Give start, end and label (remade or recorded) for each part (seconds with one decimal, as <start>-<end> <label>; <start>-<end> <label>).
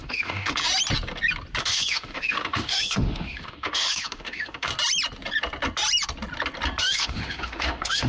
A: 0.0-0.6 remade; 0.6-1.6 recorded; 1.6-4.7 remade; 4.7-6.8 recorded; 6.8-8.1 remade